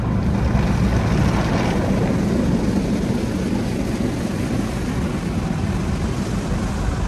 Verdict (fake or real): real